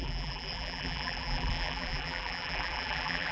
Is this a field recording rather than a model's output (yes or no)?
no